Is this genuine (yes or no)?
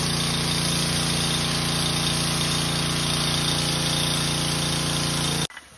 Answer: yes